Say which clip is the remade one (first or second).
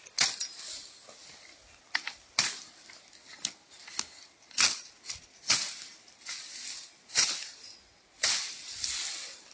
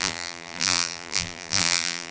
second